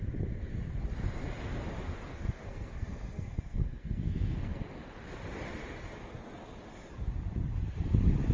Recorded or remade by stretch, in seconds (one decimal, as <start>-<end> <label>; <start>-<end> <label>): 0.0-2.1 recorded; 2.1-4.8 remade; 4.8-8.3 recorded